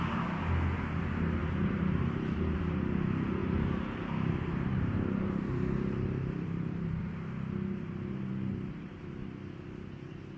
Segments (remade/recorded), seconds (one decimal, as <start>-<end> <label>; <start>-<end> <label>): 0.0-1.4 recorded; 1.4-2.6 remade; 2.6-3.4 recorded; 3.4-7.0 remade; 7.0-8.5 recorded; 8.5-9.1 remade; 9.1-10.4 recorded